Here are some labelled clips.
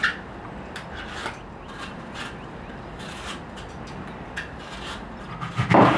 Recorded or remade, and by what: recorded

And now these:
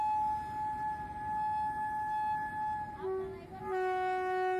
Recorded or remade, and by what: recorded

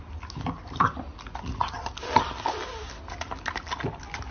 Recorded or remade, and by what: recorded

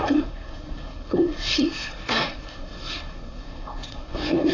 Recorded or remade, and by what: remade, codec, SNAC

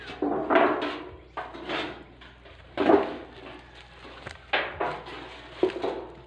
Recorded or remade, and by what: recorded